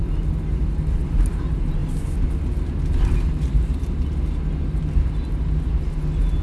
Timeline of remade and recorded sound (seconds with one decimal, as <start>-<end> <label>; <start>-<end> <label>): 0.0-6.4 recorded